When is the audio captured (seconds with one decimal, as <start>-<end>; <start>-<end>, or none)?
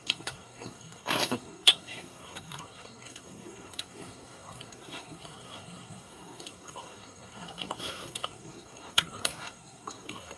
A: none